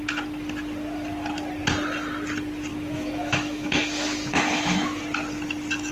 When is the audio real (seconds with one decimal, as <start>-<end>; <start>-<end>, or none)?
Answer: 0.0-2.7; 5.0-5.9